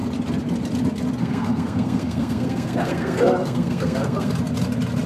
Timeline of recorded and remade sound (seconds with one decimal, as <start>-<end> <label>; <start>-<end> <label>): 0.0-1.2 recorded; 1.2-4.3 remade; 4.3-5.1 recorded